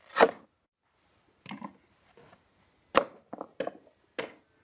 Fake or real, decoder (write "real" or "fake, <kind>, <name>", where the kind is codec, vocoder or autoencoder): real